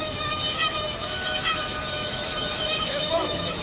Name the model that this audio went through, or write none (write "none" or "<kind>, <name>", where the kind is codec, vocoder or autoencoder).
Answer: autoencoder, DAC-VAE